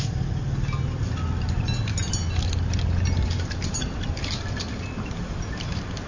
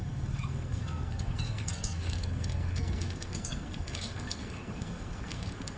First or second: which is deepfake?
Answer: second